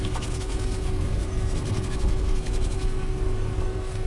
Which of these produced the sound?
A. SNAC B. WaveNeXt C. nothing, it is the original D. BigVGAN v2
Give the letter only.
A